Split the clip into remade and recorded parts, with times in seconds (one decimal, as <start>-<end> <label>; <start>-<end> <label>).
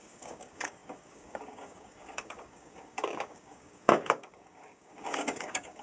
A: 0.0-5.8 remade